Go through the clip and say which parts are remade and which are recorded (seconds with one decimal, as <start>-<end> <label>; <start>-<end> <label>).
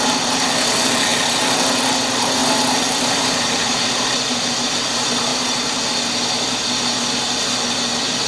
0.0-2.4 recorded; 2.4-4.5 remade; 4.5-5.3 recorded; 5.3-5.8 remade; 5.8-8.3 recorded